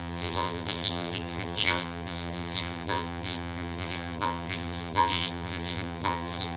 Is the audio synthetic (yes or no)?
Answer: yes